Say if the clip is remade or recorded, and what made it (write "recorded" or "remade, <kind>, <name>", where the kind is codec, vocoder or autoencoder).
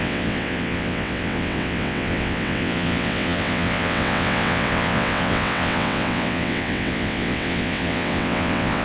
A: remade, vocoder, WaveNeXt